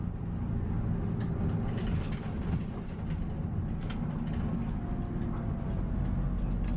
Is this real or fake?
real